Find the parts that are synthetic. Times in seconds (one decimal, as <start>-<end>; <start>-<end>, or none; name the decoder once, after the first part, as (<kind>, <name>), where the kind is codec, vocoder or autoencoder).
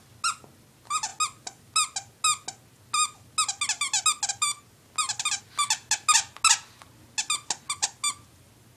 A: none